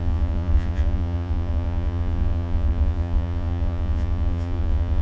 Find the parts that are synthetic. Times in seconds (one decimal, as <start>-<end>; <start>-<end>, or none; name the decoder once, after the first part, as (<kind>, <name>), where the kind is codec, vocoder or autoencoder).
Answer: 0.0-5.0 (vocoder, Vocos)